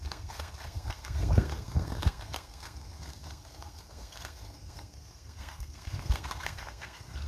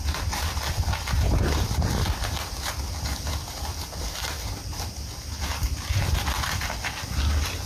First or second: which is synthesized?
first